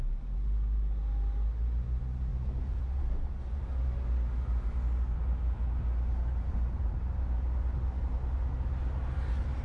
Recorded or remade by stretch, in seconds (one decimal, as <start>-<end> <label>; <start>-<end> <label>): 0.0-9.6 recorded